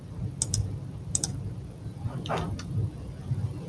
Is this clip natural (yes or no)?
yes